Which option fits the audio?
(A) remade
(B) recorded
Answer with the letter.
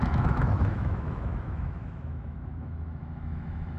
A